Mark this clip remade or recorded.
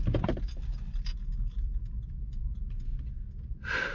recorded